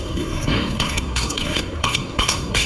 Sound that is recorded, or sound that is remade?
remade